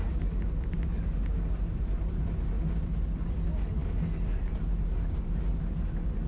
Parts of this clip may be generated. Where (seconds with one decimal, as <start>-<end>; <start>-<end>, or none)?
none